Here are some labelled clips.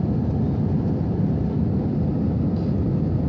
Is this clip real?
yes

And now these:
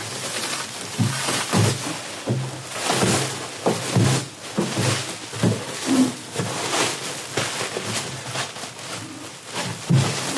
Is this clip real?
yes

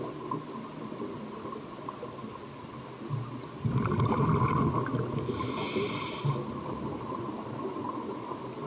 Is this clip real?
yes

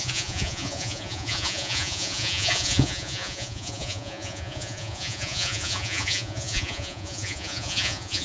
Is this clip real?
no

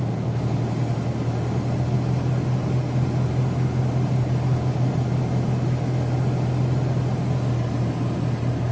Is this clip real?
yes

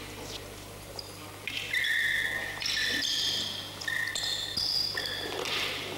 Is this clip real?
yes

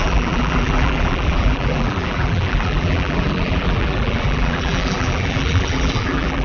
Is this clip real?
no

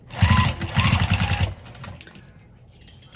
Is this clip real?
yes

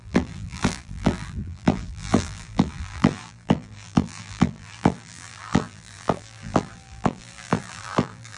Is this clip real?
no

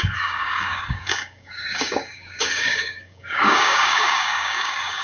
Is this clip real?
no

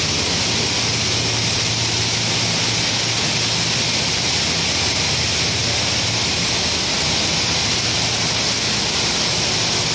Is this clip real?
yes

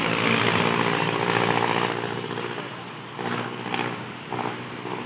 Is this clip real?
yes